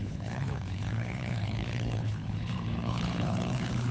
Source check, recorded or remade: remade